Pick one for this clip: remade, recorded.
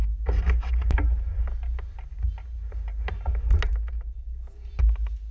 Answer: recorded